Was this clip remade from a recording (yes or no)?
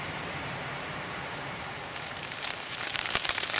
yes